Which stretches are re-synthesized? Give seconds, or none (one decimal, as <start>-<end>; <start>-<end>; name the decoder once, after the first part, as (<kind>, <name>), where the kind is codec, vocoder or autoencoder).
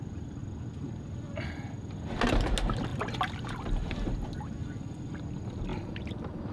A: 4.6-5.2 (vocoder, Vocos)